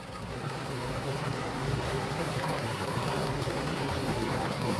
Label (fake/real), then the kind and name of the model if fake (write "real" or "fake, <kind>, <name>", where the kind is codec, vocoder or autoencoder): fake, codec, SNAC